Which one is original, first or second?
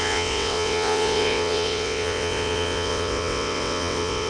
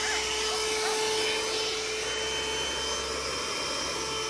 second